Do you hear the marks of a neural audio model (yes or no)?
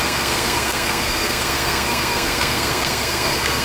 yes